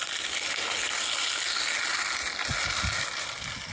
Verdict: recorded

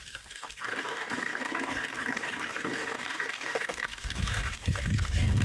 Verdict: remade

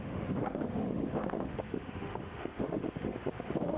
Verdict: remade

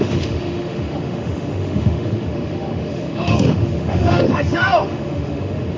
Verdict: remade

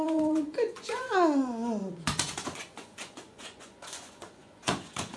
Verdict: remade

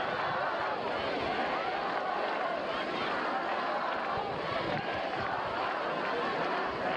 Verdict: recorded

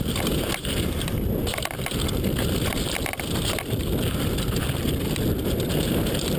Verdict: recorded